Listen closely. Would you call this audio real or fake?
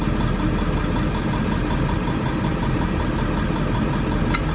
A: real